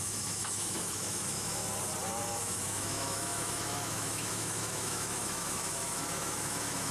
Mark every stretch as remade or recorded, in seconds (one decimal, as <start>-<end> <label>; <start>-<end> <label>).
0.0-1.6 remade; 1.6-2.4 recorded; 2.4-6.9 remade